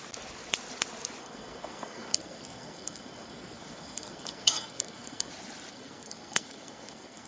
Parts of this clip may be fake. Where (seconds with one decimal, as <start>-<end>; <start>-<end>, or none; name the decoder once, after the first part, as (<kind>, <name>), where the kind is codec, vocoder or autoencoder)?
1.2-5.3 (codec, SNAC); 5.7-7.3